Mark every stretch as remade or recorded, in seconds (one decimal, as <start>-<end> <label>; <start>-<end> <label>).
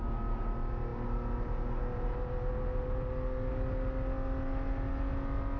0.0-5.6 recorded